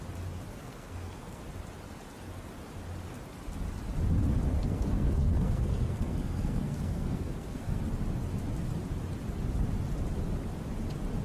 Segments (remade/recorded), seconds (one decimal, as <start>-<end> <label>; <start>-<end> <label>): 0.0-0.5 recorded; 0.5-1.4 remade; 1.4-4.5 recorded; 4.5-7.8 remade; 7.8-11.2 recorded